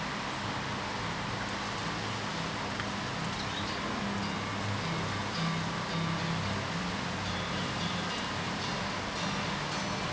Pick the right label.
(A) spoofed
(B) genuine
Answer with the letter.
B